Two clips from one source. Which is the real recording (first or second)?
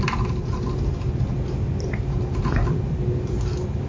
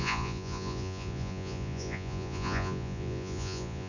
first